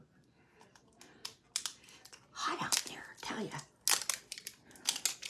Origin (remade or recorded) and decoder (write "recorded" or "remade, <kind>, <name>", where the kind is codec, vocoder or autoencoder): recorded